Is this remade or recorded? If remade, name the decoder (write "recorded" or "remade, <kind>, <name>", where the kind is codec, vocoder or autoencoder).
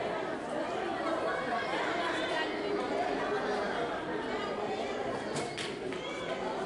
recorded